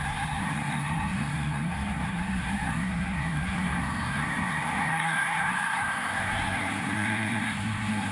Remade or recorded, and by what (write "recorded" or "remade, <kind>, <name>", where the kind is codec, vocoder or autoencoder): remade, codec, SNAC